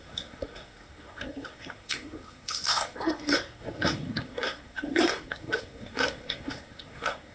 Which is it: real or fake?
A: fake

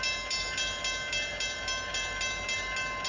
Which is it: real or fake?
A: real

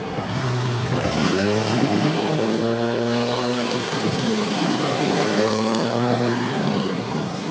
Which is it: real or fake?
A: fake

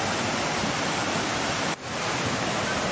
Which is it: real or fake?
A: real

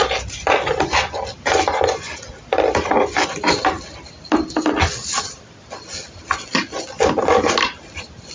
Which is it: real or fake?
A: real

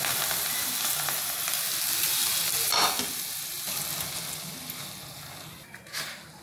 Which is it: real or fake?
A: real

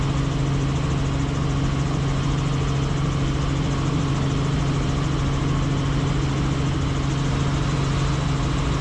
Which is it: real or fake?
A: real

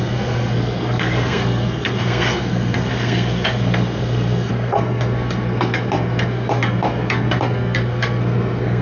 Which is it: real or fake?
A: fake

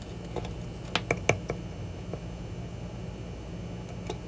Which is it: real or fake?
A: real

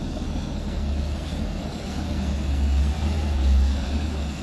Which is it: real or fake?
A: fake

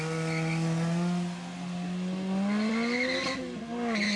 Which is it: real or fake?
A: real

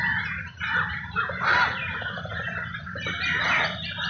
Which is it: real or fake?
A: real